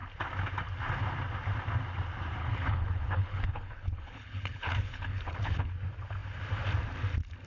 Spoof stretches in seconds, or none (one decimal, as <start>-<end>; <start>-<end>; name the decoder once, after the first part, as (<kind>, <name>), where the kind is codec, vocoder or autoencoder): 2.4-5.7 (codec, HILCodec)